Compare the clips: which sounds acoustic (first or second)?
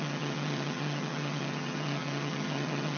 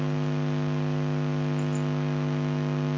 second